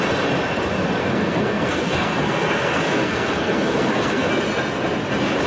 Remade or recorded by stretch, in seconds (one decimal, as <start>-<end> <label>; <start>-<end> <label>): 0.0-1.0 recorded; 1.0-4.3 remade; 4.3-5.5 recorded